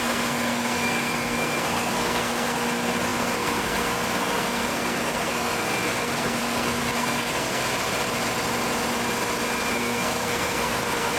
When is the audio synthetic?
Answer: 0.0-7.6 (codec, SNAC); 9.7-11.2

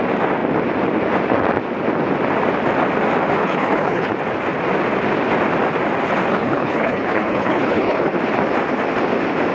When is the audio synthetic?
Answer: 3.4-4.1 (codec, HILCodec); 6.3-8.1

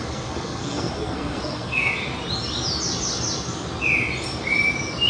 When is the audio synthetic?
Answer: 0.0-1.9 (codec, SNAC)

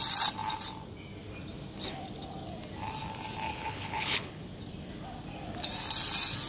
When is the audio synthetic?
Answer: 3.5-4.4 (codec, HILCodec)

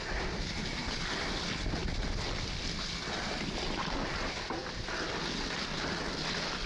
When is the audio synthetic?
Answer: none